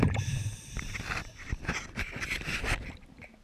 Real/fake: fake